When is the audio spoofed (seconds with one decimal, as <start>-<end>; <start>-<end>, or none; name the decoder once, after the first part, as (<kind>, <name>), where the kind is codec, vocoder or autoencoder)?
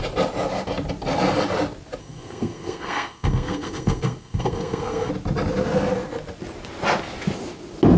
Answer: 2.0-5.1 (codec, SNAC)